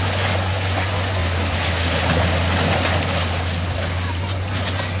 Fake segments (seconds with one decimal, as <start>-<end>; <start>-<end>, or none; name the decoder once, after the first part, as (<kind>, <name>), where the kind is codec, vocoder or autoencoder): 0.0-1.2 (vocoder, Vocos); 4.2-5.0